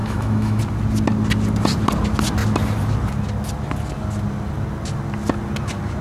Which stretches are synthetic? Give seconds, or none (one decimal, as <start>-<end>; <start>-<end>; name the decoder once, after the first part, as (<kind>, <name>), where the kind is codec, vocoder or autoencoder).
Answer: 0.0-0.6 (autoencoder, DAC-VAE)